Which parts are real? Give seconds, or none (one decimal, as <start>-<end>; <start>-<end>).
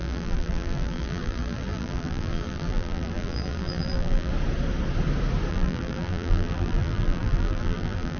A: 4.3-5.5